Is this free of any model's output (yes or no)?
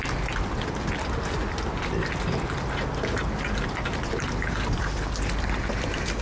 yes